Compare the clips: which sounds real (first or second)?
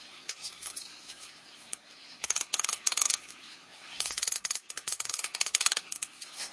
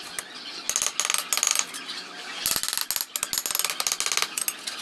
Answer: second